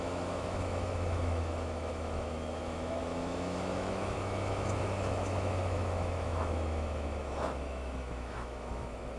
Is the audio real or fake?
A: fake